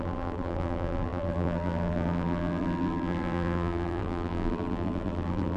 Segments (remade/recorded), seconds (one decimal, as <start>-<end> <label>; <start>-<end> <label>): 0.0-5.6 remade